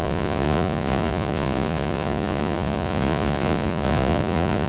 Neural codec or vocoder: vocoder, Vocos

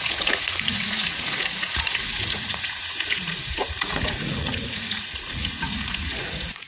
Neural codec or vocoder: vocoder, Vocos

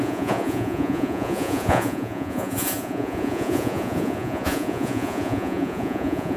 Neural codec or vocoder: vocoder, Vocos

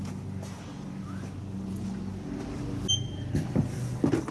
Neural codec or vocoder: none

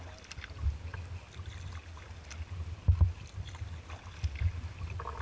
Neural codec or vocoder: none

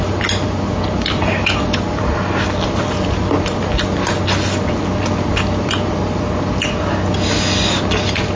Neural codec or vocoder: none